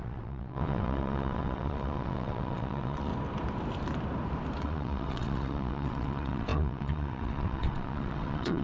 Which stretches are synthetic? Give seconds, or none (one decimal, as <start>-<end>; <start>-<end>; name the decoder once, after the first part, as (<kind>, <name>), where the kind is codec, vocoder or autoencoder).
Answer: 0.0-3.1 (vocoder, WaveNeXt); 4.6-8.6